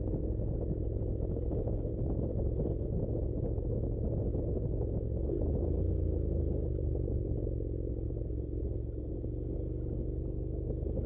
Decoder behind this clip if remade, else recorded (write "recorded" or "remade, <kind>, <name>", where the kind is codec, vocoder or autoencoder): recorded